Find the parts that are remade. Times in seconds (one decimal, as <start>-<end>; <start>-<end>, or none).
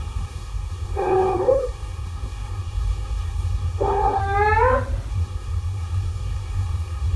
0.0-4.2; 5.1-7.2